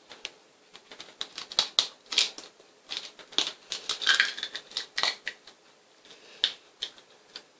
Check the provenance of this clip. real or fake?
real